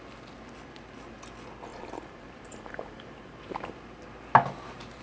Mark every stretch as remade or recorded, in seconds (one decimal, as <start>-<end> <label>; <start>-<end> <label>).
0.0-1.7 recorded; 1.7-3.7 remade; 3.7-5.0 recorded